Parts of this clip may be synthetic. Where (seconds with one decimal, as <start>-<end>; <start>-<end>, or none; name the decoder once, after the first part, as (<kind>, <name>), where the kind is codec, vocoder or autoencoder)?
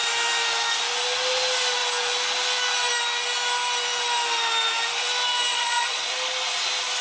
5.5-6.1 (vocoder, Vocos)